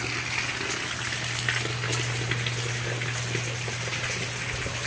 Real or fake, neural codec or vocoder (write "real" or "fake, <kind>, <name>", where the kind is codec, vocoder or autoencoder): real